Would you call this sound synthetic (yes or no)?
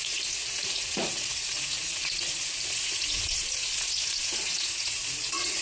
yes